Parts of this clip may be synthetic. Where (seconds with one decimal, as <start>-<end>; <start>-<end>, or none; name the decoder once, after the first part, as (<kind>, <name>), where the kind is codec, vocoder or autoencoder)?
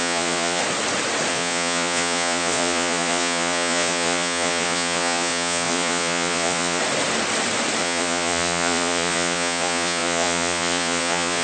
0.0-0.6 (vocoder, Vocos); 1.3-6.8; 7.8-11.4